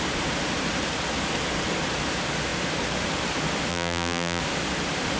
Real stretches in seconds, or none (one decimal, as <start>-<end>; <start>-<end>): 0.0-3.7; 4.4-5.2